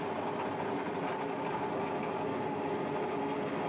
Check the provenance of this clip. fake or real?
real